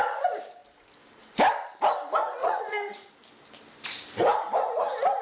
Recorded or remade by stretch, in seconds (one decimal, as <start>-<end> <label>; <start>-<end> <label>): 0.0-2.4 recorded; 2.4-3.1 remade; 3.1-5.2 recorded